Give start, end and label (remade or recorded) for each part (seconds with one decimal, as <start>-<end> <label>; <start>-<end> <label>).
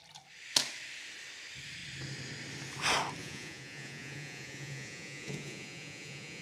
0.0-3.2 recorded; 3.2-6.4 remade